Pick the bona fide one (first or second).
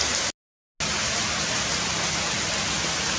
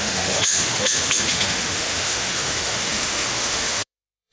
first